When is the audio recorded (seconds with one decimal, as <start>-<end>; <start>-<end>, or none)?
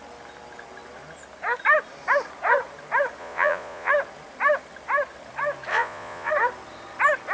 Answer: 0.0-3.2; 3.9-5.7; 6.3-7.3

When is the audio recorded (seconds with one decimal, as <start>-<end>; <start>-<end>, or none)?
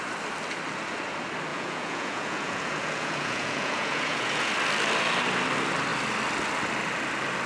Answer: 0.0-1.5; 4.5-7.5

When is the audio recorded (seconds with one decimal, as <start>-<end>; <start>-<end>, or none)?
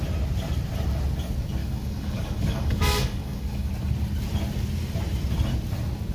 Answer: 0.0-1.6; 3.7-6.1